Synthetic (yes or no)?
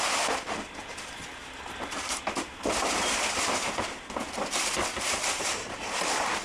no